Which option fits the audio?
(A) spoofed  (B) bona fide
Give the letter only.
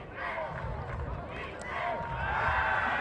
B